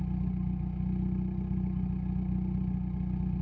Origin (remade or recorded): recorded